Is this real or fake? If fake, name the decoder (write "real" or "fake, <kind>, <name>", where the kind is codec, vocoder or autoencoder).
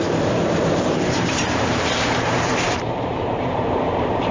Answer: fake, vocoder, BigVGAN v2